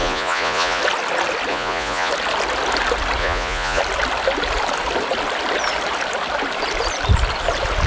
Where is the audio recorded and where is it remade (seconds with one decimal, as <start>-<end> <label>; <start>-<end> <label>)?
0.0-0.8 remade; 0.8-1.5 recorded; 1.5-2.1 remade; 2.1-3.2 recorded; 3.2-3.8 remade; 3.8-7.9 recorded